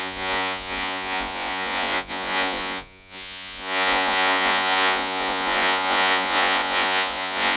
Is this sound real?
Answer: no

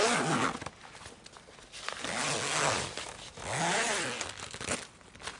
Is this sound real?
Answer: yes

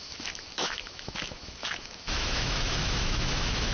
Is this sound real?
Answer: no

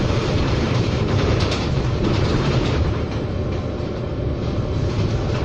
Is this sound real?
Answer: no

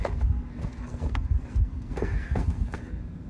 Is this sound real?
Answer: no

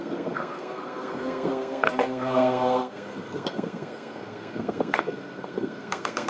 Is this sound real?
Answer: no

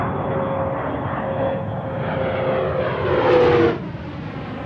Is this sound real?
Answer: yes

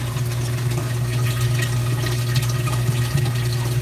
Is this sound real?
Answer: yes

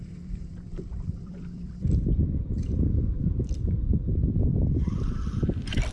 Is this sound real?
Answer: no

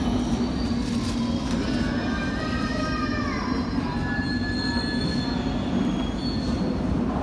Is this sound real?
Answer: yes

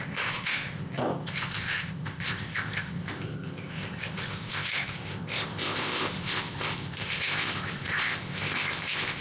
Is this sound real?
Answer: no